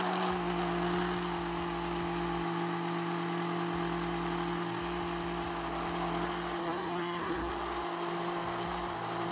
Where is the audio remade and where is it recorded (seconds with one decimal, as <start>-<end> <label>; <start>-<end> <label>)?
0.0-6.6 recorded; 6.6-7.5 remade; 7.5-9.3 recorded